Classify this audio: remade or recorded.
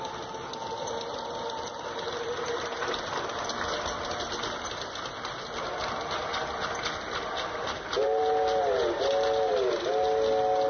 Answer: recorded